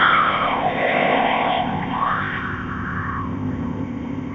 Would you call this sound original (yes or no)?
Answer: no